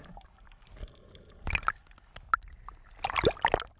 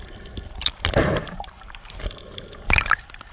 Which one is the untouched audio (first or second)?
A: first